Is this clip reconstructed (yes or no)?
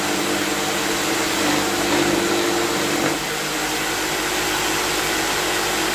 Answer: no